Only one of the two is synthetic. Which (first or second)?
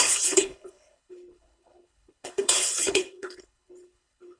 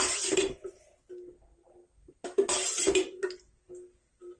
first